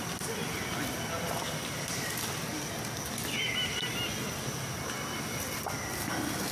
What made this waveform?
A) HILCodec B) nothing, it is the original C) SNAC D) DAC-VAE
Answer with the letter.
B